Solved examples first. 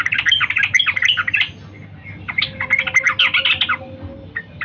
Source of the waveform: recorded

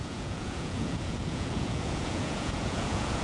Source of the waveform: remade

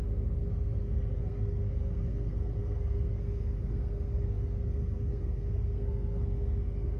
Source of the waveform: remade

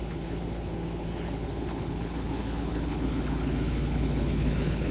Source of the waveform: remade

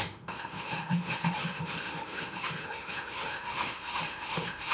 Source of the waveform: remade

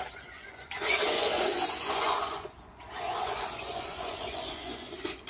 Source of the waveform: remade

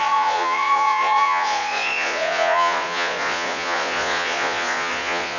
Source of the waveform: remade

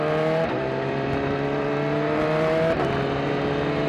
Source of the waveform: recorded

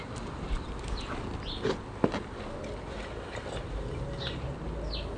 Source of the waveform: recorded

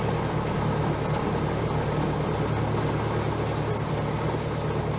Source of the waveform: recorded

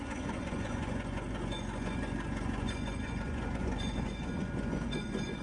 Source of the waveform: remade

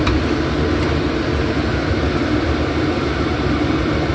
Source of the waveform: recorded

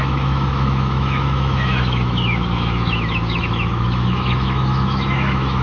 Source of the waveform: remade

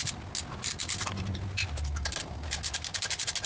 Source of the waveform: recorded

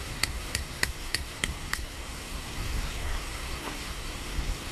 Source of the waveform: remade